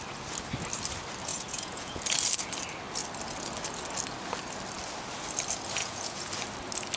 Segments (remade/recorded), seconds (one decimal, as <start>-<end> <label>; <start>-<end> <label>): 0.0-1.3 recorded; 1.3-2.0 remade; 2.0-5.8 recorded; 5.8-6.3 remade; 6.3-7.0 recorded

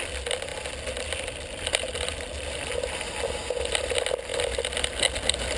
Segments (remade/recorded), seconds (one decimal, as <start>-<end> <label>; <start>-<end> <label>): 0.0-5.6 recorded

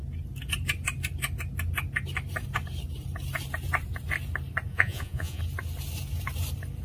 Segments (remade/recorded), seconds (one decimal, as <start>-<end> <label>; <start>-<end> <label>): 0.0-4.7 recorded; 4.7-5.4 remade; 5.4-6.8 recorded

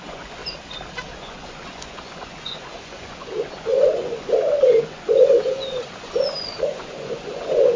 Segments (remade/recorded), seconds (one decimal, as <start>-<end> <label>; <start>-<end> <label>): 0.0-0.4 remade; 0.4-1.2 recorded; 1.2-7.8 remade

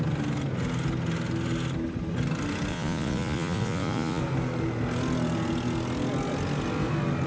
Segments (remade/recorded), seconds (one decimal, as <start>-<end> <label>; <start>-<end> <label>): 0.0-2.7 recorded; 2.7-4.2 remade; 4.2-7.3 recorded

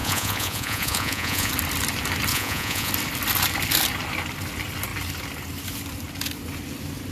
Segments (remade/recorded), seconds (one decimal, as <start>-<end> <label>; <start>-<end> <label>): 0.0-1.5 remade; 1.5-2.3 recorded; 2.3-2.9 remade; 2.9-7.1 recorded

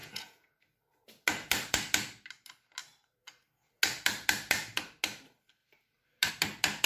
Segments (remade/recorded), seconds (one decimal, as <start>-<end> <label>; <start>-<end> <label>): 0.0-0.6 remade; 0.6-6.9 recorded

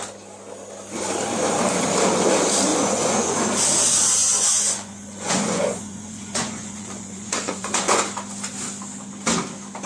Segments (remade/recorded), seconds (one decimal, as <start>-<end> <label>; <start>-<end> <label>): 0.0-2.7 recorded; 2.7-3.3 remade; 3.3-4.2 recorded; 4.2-8.0 remade; 8.0-9.9 recorded